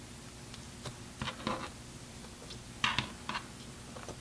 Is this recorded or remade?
recorded